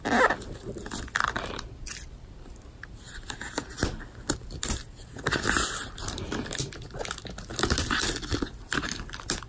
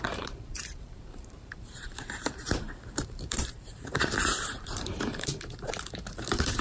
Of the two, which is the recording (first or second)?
first